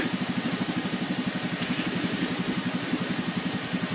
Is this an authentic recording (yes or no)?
no